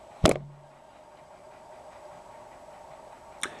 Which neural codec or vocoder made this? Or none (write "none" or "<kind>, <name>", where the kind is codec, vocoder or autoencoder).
none